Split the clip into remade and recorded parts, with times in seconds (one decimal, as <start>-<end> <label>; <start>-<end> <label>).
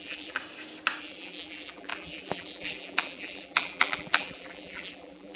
0.0-0.4 remade; 0.4-1.0 recorded; 1.0-5.4 remade